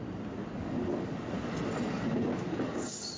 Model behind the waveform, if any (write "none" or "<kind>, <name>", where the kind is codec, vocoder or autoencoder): none